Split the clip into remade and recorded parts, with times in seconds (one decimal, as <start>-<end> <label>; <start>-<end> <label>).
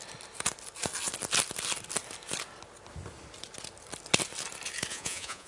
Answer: 0.0-4.9 recorded; 4.9-5.5 remade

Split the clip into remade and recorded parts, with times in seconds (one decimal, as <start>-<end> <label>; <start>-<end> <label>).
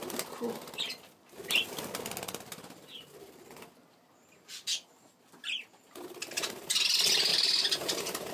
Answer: 0.0-7.3 recorded; 7.3-8.3 remade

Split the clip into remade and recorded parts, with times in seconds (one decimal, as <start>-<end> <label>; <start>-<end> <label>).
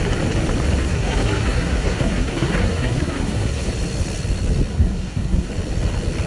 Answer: 0.0-0.8 recorded; 0.8-3.7 remade; 3.7-4.7 recorded; 4.7-5.5 remade; 5.5-6.3 recorded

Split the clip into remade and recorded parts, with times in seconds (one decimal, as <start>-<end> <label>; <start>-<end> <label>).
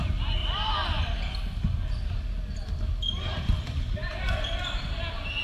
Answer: 0.0-0.4 remade; 0.4-3.6 recorded; 3.6-5.4 remade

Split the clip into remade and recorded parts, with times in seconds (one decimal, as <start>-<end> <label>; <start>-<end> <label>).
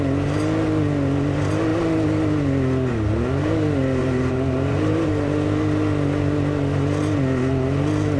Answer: 0.0-4.0 recorded; 4.0-5.1 remade; 5.1-8.2 recorded